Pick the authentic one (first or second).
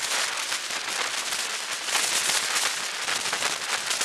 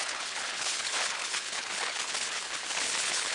first